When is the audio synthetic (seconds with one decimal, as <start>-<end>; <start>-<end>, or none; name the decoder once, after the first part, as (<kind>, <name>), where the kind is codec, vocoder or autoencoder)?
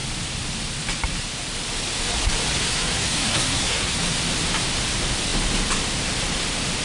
2.6-4.0 (codec, SNAC)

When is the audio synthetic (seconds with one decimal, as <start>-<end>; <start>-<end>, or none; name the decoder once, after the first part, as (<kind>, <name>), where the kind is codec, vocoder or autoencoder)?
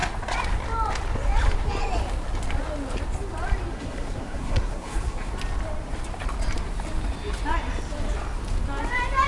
3.7-5.3 (codec, SNAC)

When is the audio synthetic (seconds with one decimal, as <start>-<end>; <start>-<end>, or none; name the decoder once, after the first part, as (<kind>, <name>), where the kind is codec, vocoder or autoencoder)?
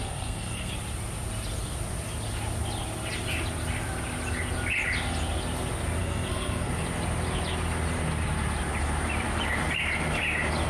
0.0-0.7 (codec, SNAC); 6.0-6.7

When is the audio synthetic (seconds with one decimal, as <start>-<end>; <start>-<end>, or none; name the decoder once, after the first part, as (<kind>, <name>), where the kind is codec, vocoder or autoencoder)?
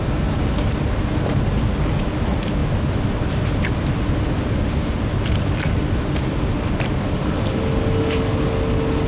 none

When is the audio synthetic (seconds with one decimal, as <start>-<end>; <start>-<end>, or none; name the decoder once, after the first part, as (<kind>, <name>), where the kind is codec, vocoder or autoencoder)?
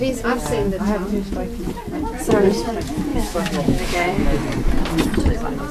3.1-4.4 (autoencoder, DAC-VAE)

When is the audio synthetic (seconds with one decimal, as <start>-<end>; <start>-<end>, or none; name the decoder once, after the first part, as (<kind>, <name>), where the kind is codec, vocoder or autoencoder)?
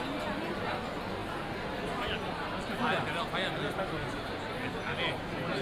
none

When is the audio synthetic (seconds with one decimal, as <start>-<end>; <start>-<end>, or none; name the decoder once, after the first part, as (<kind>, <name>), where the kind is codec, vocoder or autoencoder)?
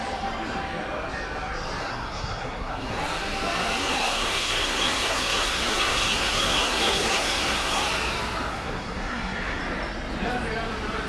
1.8-3.0 (codec, SNAC); 3.8-7.8; 8.5-9.6